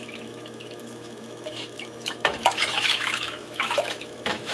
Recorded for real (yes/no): no